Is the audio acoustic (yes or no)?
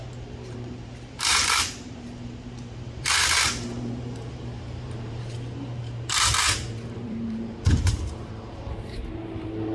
no